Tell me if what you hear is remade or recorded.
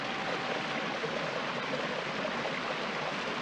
recorded